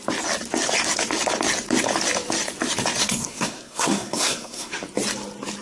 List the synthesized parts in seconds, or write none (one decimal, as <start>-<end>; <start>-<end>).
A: 3.0-4.7